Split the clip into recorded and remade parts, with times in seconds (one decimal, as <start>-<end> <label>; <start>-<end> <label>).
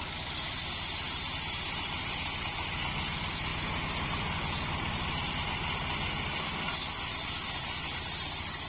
0.0-8.7 recorded